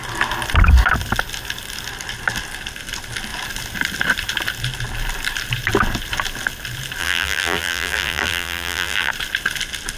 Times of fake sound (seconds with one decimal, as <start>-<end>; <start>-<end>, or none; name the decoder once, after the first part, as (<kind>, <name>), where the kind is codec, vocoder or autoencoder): 7.0-9.1 (vocoder, BigVGAN v2)